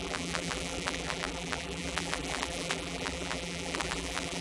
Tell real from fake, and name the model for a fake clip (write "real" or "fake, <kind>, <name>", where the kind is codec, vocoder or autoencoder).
fake, vocoder, BigVGAN v2